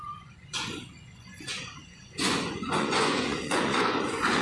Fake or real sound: fake